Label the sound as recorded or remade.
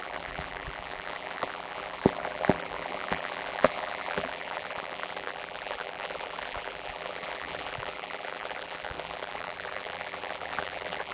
remade